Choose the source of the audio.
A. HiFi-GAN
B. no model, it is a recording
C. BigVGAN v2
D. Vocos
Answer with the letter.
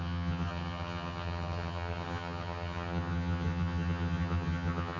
A